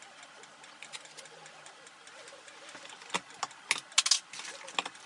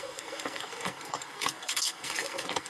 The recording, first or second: first